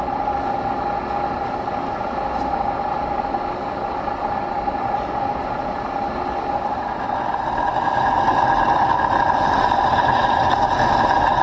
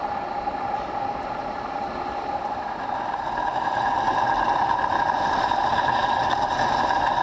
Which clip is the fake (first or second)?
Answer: second